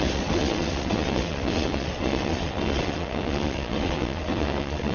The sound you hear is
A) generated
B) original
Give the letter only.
A